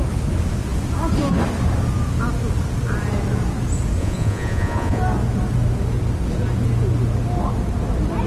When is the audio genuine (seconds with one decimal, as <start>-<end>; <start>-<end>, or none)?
0.0-4.0; 5.0-8.3